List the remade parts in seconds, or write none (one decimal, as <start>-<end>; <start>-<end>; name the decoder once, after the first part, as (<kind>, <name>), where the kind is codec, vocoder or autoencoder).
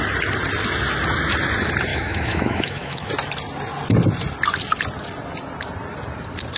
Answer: 1.9-3.1 (autoencoder, DAC-VAE)